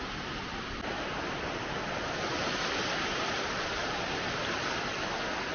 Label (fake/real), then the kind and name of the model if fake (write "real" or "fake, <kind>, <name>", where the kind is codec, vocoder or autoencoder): real